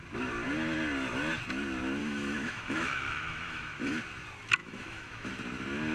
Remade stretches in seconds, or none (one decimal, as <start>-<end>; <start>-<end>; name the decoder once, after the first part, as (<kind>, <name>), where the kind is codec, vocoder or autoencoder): 2.0-4.0 (autoencoder, DAC-VAE); 4.6-5.3